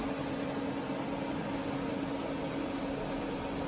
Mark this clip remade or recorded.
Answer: recorded